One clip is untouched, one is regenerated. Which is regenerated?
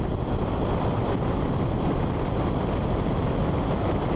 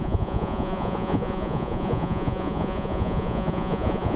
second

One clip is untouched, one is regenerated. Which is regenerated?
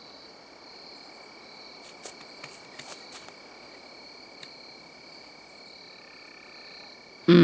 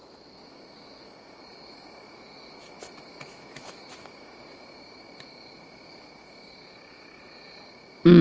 second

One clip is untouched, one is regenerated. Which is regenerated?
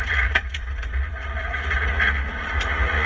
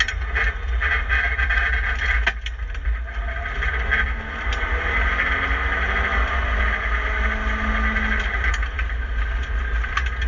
first